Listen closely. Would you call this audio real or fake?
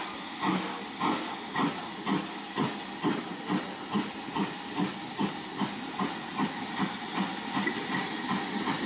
real